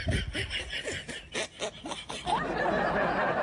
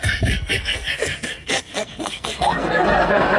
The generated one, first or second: second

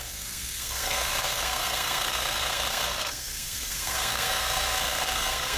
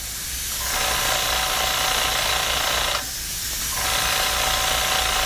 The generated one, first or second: first